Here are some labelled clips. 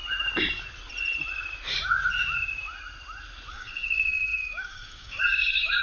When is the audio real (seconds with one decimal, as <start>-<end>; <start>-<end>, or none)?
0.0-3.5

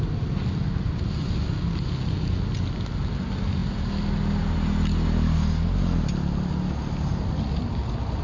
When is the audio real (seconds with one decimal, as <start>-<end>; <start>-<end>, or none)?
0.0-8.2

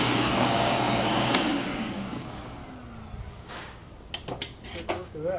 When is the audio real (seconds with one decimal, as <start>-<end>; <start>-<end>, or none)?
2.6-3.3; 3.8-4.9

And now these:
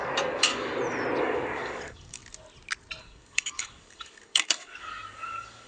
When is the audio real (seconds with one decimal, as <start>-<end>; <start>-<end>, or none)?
0.7-1.2; 2.2-3.0

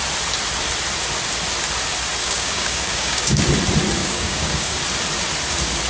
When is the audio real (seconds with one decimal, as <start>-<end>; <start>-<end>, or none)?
0.0-2.2; 3.4-4.0; 4.8-5.9

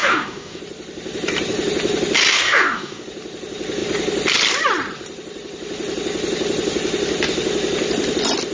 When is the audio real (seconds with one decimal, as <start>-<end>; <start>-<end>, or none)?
0.6-2.3; 3.0-8.5

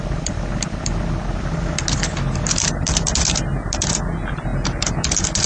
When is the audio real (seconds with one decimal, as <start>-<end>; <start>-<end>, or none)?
0.0-5.5